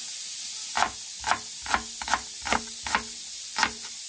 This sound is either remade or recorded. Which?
recorded